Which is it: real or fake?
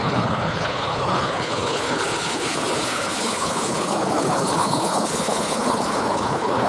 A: fake